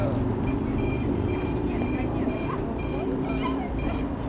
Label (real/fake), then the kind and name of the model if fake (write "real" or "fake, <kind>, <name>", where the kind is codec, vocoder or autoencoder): fake, vocoder, BigVGAN v2